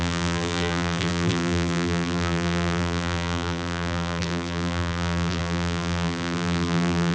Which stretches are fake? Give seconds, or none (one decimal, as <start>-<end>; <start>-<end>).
0.0-7.1